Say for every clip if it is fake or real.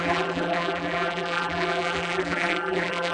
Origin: fake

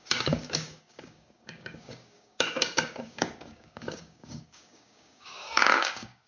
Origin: fake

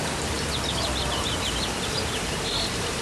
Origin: real